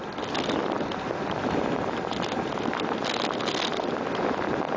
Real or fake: real